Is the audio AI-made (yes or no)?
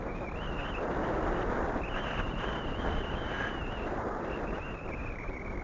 no